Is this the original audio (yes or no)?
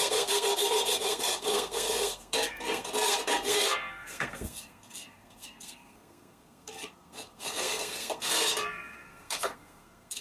no